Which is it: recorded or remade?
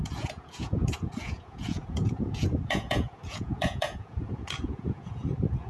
remade